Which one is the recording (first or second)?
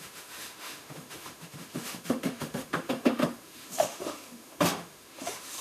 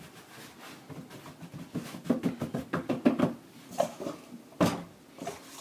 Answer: second